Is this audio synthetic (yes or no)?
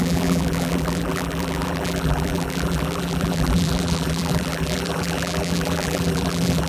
yes